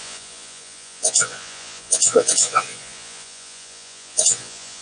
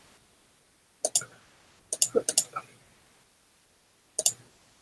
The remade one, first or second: first